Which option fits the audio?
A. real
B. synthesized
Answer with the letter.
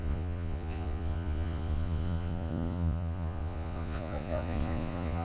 B